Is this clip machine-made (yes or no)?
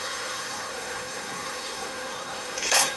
yes